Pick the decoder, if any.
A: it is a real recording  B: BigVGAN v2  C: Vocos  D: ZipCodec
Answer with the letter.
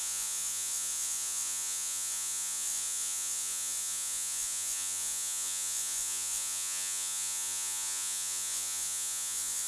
C